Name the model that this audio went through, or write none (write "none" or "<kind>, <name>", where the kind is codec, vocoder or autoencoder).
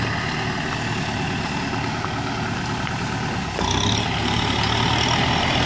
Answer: none